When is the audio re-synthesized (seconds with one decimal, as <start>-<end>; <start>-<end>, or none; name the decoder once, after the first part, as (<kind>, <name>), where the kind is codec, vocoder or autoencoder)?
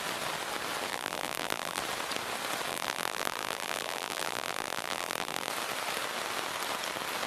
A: 0.9-1.8 (vocoder, BigVGAN v2); 2.7-5.5